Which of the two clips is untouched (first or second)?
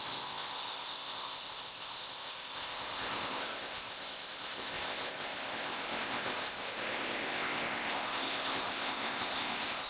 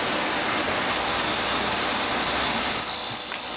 second